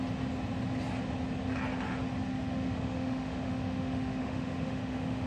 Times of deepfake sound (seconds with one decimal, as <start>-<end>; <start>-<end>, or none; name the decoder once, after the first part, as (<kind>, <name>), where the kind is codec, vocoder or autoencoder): 2.3-5.3 (autoencoder, DAC-VAE)